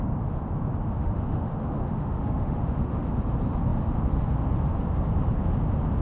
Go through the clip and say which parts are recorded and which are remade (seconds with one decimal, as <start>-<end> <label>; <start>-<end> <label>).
0.0-1.0 recorded; 1.0-3.1 remade; 3.1-6.0 recorded

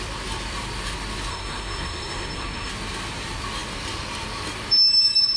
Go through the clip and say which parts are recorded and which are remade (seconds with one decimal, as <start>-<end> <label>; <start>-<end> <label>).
0.0-1.3 recorded; 1.3-2.7 remade; 2.7-5.4 recorded

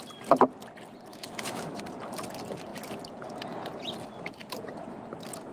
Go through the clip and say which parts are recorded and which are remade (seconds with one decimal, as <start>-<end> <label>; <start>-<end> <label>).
0.0-1.1 recorded; 1.1-1.8 remade; 1.8-5.5 recorded

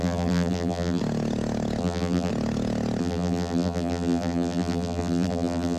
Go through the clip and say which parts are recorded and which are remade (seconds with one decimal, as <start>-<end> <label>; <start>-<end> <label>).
0.0-1.0 remade; 1.0-1.8 recorded; 1.8-2.3 remade; 2.3-3.0 recorded; 3.0-5.8 remade

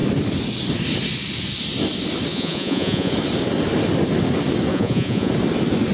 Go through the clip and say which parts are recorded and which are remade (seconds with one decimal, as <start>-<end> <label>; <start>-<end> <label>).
0.0-2.3 recorded; 2.3-3.1 remade; 3.1-4.7 recorded; 4.7-5.3 remade; 5.3-5.9 recorded